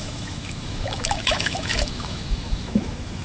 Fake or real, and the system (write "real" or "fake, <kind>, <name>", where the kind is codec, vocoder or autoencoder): fake, autoencoder, DAC-VAE